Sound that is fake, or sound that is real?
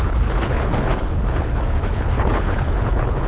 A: fake